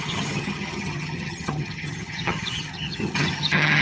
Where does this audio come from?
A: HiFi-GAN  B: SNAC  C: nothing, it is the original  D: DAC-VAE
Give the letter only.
A